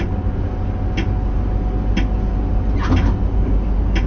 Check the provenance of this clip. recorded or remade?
recorded